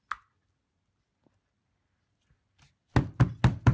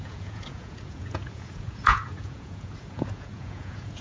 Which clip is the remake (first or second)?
second